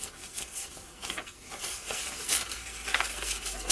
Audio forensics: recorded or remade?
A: remade